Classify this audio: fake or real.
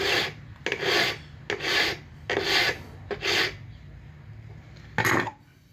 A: real